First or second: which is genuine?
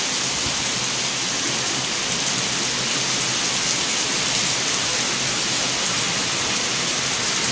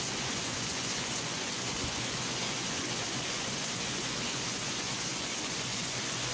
first